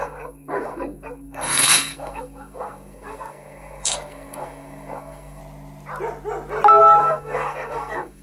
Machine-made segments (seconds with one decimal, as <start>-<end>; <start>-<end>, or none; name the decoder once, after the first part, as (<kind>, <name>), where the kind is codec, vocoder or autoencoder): 0.0-5.4 (codec, SNAC); 7.0-8.2